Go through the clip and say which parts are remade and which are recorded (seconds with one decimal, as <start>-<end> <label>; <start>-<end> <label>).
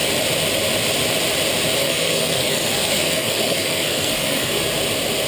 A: 0.0-1.8 recorded; 1.8-4.6 remade; 4.6-5.3 recorded